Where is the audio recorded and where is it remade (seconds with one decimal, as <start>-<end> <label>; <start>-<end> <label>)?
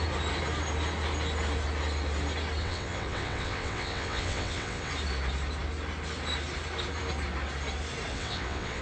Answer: 0.0-2.6 recorded; 2.6-4.9 remade; 4.9-8.1 recorded; 8.1-8.8 remade